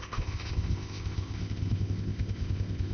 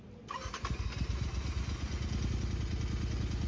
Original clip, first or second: second